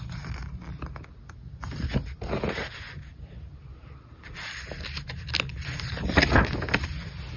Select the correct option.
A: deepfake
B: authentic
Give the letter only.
B